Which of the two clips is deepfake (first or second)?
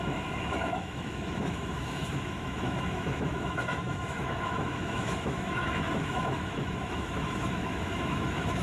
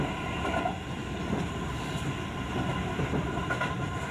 first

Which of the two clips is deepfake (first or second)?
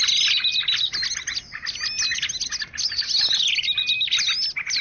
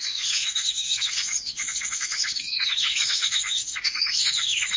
second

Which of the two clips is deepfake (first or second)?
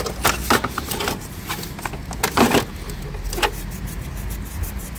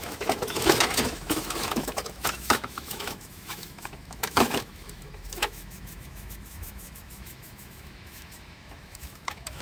second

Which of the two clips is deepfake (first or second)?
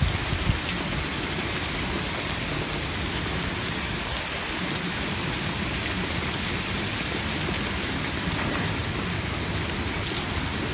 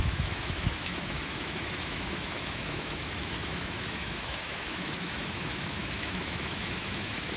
second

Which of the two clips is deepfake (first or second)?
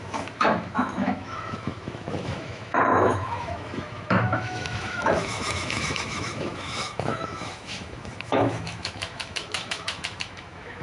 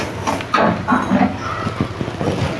first